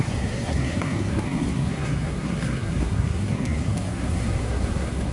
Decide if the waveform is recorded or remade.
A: remade